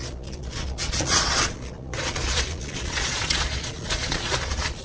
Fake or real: fake